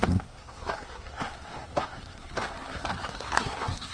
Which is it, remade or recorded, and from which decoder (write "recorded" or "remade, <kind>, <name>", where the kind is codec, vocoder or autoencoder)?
remade, codec, SNAC